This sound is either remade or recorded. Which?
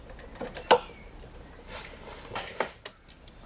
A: recorded